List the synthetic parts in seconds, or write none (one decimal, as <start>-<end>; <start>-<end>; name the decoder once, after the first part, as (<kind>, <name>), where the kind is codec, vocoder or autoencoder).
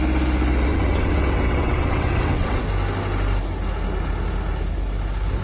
0.7-2.6 (vocoder, WaveNeXt)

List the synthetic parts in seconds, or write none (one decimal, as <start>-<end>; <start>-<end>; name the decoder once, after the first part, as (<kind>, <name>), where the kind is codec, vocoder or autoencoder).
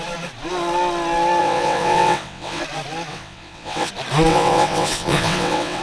1.4-2.6 (vocoder, WaveNeXt); 3.1-3.9; 4.3-5.8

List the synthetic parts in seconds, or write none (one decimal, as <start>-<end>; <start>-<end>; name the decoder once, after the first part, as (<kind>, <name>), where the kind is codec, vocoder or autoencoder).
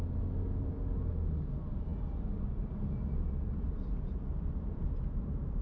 none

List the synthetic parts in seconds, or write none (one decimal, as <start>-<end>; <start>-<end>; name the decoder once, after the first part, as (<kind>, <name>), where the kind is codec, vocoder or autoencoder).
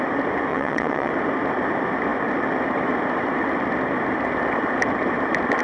0.5-1.1 (vocoder, WaveNeXt)